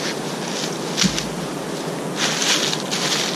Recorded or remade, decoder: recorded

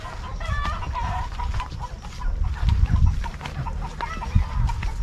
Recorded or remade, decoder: recorded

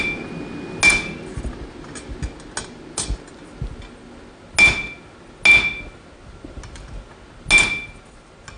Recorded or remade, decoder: recorded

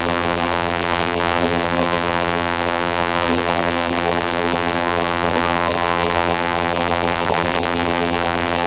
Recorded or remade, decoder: remade, vocoder, BigVGAN v2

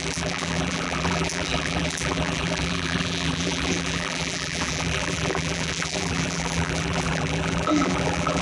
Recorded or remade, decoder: remade, vocoder, BigVGAN v2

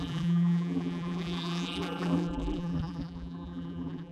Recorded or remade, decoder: remade, vocoder, BigVGAN v2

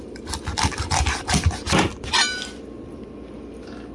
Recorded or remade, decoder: remade, vocoder, BigVGAN v2